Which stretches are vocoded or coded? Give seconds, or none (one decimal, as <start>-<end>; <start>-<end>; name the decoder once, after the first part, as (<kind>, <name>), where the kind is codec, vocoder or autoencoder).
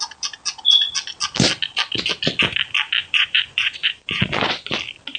3.0-4.7 (vocoder, Vocos)